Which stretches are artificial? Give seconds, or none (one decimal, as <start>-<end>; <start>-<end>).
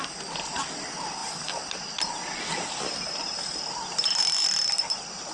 none